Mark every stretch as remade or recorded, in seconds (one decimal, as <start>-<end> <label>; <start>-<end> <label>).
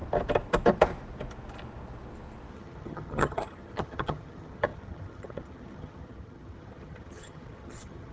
0.0-2.5 recorded; 2.5-8.1 remade